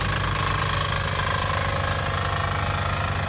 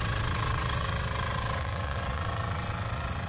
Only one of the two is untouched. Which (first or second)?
first